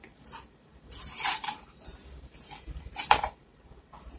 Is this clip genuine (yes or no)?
no